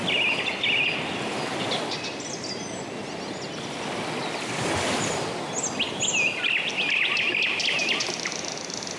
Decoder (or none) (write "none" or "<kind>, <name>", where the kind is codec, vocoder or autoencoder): none